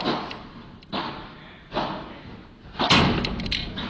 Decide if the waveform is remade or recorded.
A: recorded